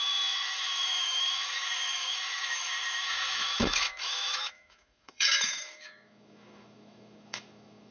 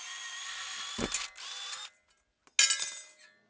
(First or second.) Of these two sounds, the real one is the second